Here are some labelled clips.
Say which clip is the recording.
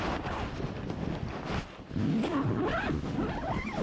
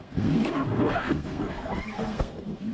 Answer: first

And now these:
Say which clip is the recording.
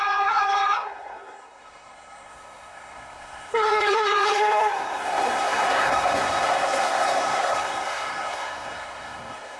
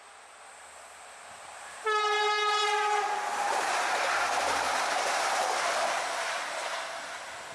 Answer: second